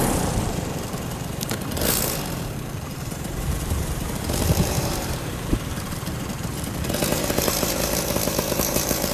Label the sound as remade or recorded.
remade